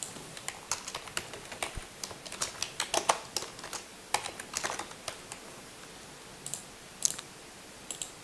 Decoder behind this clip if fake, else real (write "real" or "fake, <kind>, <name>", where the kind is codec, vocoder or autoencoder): real